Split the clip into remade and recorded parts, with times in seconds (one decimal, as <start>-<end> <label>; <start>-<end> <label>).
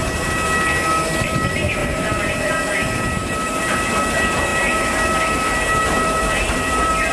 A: 0.0-1.8 recorded; 1.8-2.5 remade; 2.5-3.2 recorded; 3.2-3.9 remade; 3.9-4.5 recorded; 4.5-7.1 remade